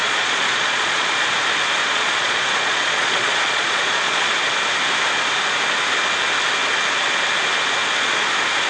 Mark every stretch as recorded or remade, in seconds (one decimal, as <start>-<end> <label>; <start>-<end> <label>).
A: 0.0-1.1 remade; 1.1-1.8 recorded; 1.8-4.3 remade; 4.3-8.7 recorded